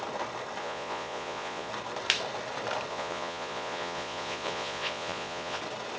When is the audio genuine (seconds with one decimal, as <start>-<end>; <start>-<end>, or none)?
0.0-0.6; 1.7-2.9; 5.6-6.0